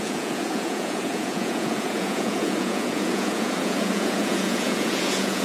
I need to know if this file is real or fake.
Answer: fake